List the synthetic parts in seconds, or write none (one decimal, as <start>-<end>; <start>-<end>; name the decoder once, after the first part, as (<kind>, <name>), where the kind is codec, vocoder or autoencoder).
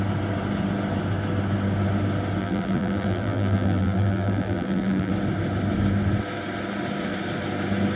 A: 2.4-5.1 (vocoder, BigVGAN v2)